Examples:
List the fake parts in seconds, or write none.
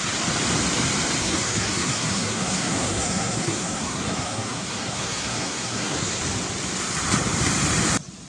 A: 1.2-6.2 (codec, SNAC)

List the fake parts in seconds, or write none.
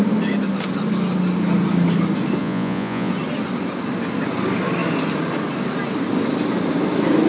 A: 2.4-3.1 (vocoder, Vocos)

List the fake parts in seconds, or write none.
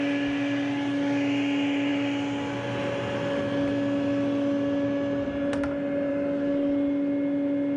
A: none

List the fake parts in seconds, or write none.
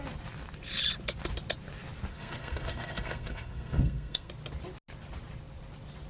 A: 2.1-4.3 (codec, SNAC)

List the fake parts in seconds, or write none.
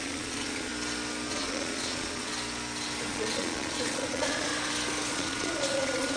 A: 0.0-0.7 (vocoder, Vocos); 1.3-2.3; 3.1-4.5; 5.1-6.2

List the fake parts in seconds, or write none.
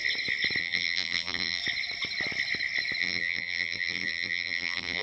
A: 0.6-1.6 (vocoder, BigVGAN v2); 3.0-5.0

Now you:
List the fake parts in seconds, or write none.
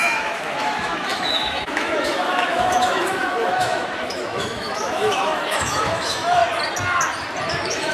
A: 0.0-6.4 (autoencoder, DAC-VAE); 7.5-7.9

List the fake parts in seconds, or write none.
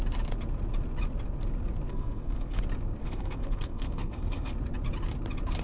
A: 1.9-2.6 (codec, SNAC); 3.0-4.5